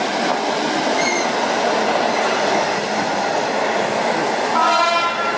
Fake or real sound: real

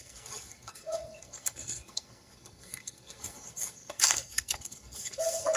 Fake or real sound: fake